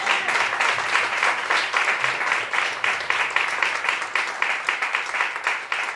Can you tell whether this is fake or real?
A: real